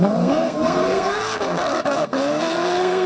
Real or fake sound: fake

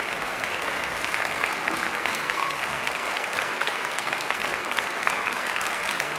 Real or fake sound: fake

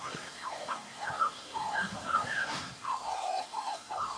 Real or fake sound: fake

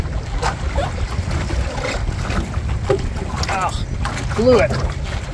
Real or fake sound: real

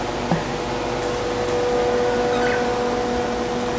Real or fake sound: real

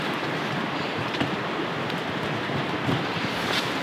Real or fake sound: real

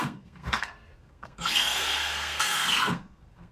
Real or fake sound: fake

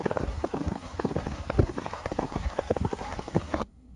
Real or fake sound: fake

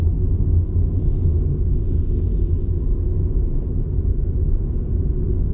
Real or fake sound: real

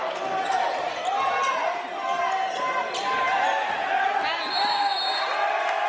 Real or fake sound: real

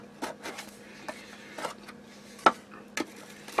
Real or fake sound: real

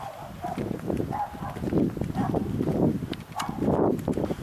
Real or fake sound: real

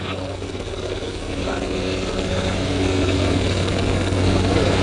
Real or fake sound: fake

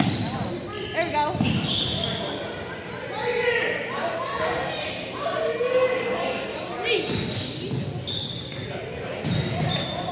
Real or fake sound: real